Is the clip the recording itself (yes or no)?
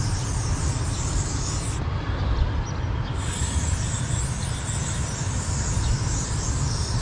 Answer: yes